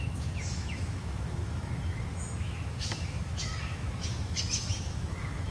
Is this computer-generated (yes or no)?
yes